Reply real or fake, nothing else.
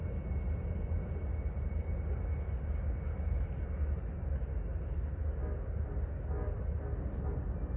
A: real